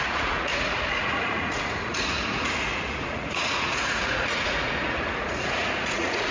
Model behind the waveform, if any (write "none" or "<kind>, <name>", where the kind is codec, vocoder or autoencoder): vocoder, Vocos